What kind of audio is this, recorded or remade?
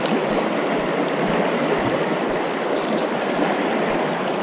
recorded